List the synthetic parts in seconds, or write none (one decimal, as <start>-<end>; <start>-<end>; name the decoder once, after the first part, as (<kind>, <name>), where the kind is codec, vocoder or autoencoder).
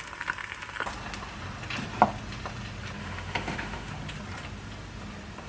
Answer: 3.0-3.9 (autoencoder, DAC-VAE)